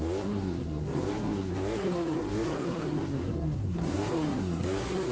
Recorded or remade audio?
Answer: remade